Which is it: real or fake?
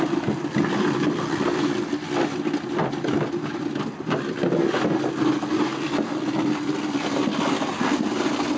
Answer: real